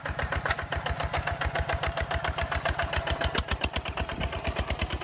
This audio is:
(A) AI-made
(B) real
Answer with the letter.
A